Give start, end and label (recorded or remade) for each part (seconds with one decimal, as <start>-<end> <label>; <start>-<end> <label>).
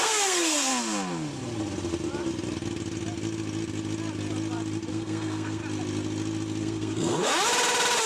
0.0-0.7 remade; 0.7-4.9 recorded; 4.9-5.6 remade; 5.6-6.6 recorded; 6.6-7.3 remade; 7.3-8.1 recorded